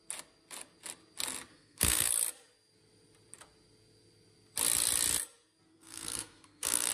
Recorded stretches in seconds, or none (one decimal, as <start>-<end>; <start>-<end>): 0.0-1.5; 2.1-5.7